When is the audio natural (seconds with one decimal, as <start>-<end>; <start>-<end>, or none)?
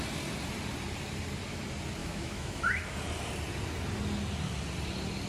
0.0-2.0; 2.6-5.3